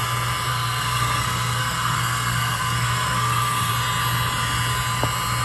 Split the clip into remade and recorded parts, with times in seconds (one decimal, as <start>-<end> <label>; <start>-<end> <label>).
0.0-0.5 recorded; 0.5-3.7 remade; 3.7-5.4 recorded